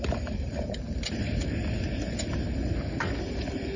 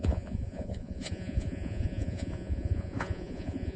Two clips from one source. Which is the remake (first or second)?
second